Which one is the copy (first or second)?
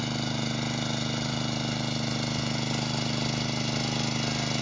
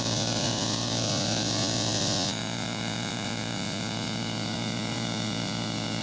second